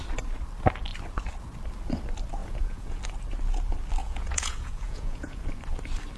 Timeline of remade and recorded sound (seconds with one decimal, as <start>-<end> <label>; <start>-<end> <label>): 0.0-2.4 recorded; 2.4-3.0 remade; 3.0-4.0 recorded; 4.0-5.4 remade; 5.4-6.2 recorded

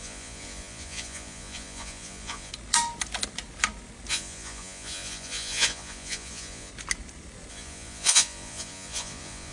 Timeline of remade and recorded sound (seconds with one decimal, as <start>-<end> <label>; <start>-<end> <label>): 0.0-2.5 remade; 2.5-4.1 recorded; 4.1-6.7 remade; 6.7-7.5 recorded; 7.5-9.5 remade

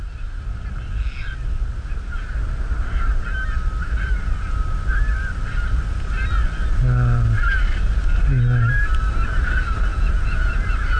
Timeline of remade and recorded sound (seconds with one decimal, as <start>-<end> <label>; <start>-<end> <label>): 0.0-9.9 recorded; 9.9-10.6 remade; 10.6-11.0 recorded

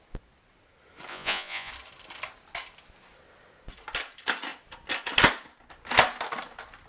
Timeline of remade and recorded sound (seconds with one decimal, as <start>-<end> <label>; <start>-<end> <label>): 0.0-1.1 recorded; 1.1-1.7 remade; 1.7-6.9 recorded

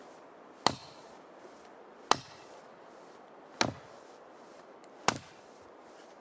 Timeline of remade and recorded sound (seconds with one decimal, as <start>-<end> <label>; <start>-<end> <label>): 0.0-6.2 recorded

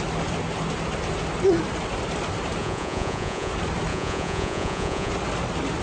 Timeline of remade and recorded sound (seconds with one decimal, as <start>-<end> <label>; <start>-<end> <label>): 0.0-2.6 recorded; 2.6-3.5 remade; 3.5-3.9 recorded; 3.9-5.1 remade; 5.1-5.8 recorded

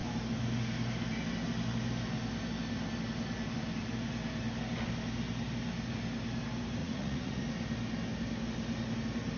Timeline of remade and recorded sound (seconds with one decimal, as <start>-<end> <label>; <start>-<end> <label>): 0.0-6.8 recorded; 6.8-7.4 remade; 7.4-9.4 recorded